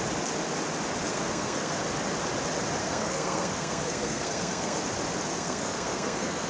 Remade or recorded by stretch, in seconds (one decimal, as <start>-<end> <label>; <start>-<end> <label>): 0.0-1.1 recorded; 1.1-1.8 remade; 1.8-2.8 recorded; 2.8-4.8 remade; 4.8-5.3 recorded; 5.3-6.5 remade